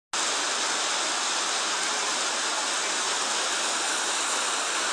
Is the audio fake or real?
real